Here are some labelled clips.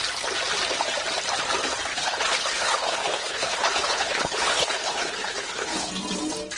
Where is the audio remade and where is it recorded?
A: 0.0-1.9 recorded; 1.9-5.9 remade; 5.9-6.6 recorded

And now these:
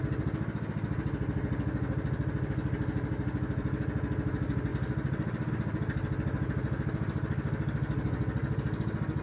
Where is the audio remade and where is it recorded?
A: 0.0-9.2 recorded

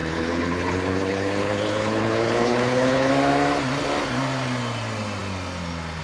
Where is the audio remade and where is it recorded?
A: 0.0-3.1 remade; 3.1-6.0 recorded